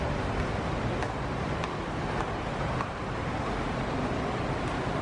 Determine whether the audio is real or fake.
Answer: real